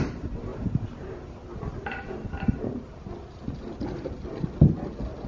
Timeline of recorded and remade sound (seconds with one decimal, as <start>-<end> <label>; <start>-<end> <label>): 0.0-5.3 recorded